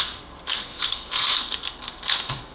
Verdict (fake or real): fake